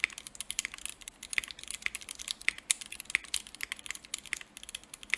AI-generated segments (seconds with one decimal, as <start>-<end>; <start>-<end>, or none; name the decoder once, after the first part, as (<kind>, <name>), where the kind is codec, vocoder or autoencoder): 0.9-3.1 (vocoder, BigVGAN v2)